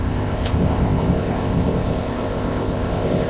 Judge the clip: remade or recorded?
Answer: remade